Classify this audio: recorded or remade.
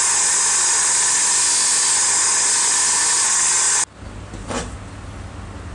recorded